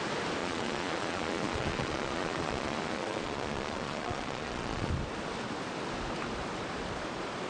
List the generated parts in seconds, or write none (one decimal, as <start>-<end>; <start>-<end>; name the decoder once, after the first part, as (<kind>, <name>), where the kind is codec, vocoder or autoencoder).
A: 0.4-4.9 (vocoder, Vocos)